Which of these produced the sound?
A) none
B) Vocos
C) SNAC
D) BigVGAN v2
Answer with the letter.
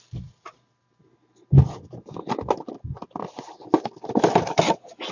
A